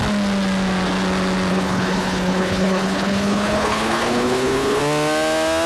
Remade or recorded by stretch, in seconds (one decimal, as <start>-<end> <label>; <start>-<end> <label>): 0.0-1.5 recorded; 1.5-4.8 remade; 4.8-5.7 recorded